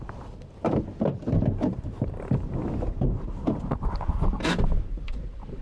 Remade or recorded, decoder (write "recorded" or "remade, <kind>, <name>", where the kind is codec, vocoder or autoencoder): remade, vocoder, BigVGAN v2